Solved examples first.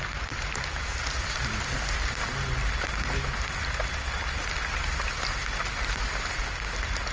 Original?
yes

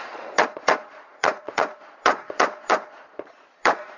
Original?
no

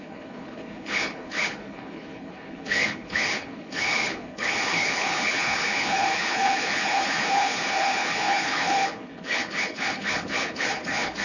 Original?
no